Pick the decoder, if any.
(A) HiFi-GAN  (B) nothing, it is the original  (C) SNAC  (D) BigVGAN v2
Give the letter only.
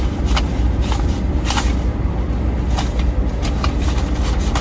B